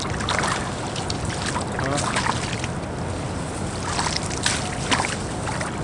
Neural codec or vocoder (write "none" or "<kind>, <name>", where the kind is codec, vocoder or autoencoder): none